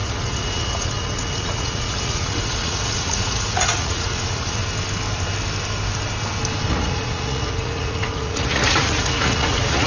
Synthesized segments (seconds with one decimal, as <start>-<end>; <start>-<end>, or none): 0.0-4.6; 6.7-9.9